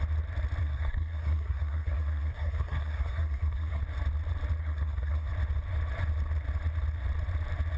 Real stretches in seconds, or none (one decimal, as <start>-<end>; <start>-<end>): 0.0-0.6; 3.8-4.6; 5.3-7.8